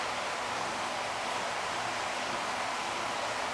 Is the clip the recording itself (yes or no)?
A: yes